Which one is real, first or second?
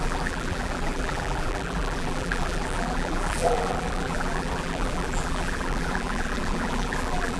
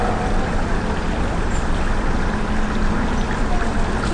second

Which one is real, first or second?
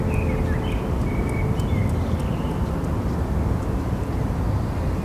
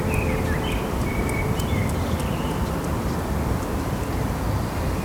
first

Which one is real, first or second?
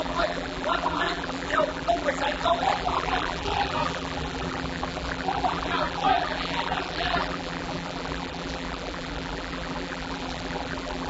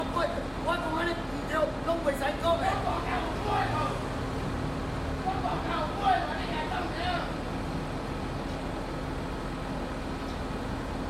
second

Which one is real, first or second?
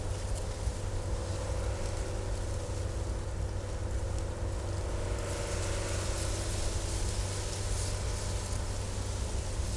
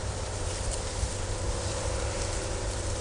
first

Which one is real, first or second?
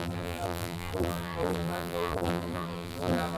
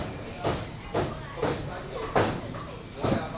second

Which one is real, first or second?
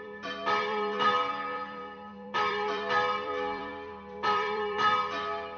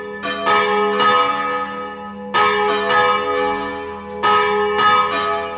second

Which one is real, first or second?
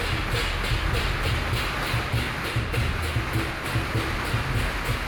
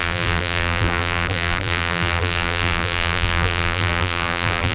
first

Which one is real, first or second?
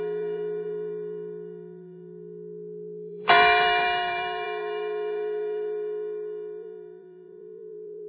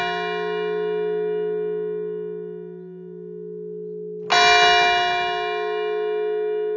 second